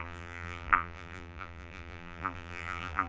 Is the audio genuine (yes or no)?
no